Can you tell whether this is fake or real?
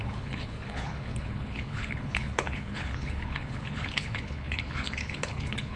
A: fake